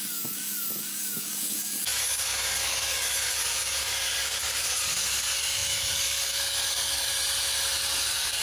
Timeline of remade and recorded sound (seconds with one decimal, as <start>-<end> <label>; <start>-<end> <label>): 0.0-7.1 remade; 7.1-8.0 recorded; 8.0-8.4 remade